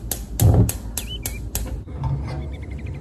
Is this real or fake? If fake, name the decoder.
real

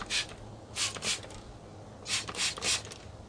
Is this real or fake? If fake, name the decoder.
real